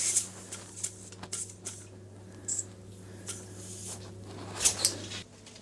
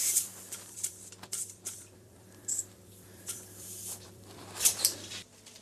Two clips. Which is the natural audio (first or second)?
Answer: first